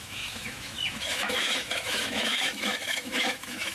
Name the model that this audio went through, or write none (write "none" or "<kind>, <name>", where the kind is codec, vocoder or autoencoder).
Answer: autoencoder, DAC-VAE